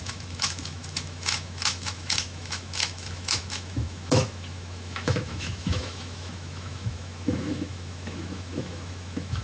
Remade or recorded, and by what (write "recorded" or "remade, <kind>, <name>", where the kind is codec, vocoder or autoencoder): remade, autoencoder, DAC-VAE